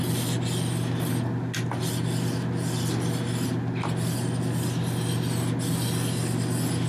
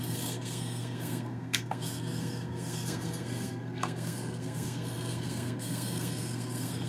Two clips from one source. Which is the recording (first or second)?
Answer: first